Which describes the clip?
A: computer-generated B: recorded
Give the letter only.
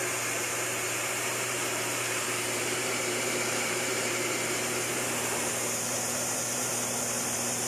A